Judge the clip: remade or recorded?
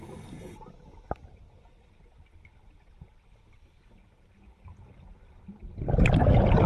recorded